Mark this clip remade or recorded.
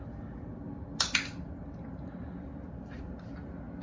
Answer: recorded